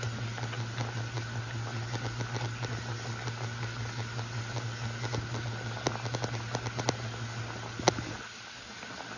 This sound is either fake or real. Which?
real